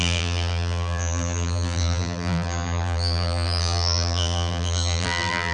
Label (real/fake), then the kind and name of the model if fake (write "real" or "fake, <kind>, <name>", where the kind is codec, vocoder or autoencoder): fake, vocoder, BigVGAN v2